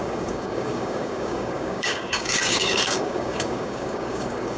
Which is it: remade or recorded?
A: remade